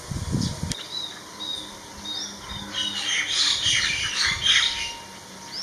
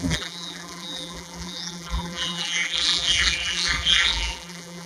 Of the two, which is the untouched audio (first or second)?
first